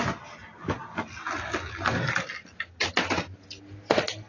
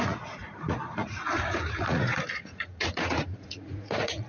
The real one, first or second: first